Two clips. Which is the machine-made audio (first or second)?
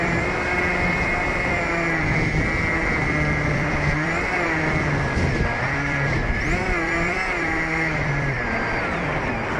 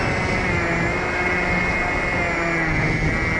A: first